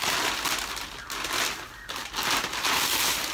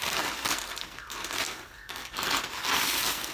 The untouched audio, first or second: first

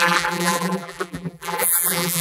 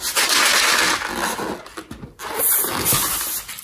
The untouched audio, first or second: second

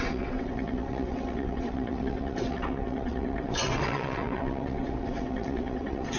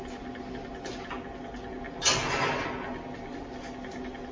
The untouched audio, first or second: second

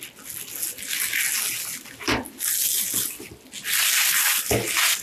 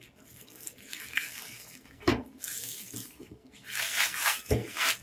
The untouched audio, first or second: first